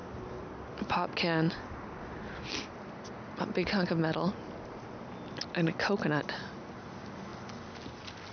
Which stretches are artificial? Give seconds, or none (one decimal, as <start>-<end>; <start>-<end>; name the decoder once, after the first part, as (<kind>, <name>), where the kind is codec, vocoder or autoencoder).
none